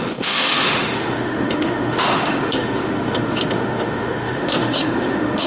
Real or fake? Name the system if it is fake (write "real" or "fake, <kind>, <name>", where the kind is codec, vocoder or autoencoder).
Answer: fake, autoencoder, DAC-VAE